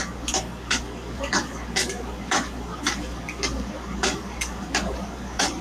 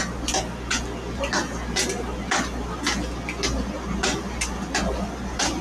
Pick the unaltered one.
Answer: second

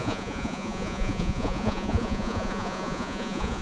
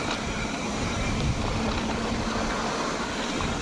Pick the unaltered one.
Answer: second